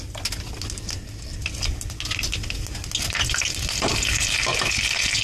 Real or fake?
real